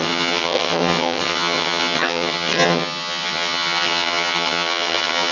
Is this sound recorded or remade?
remade